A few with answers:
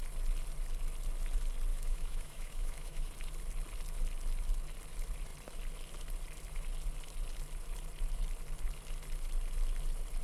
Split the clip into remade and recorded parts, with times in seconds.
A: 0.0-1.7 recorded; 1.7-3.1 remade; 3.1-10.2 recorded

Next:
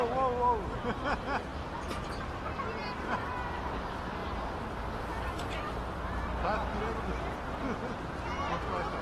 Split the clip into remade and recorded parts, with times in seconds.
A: 0.0-9.0 recorded